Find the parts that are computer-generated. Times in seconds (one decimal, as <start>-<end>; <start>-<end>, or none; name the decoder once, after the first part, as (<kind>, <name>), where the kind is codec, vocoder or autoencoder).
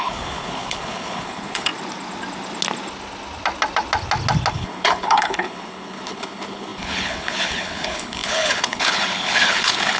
0.0-1.7 (codec, HILCodec); 4.5-10.0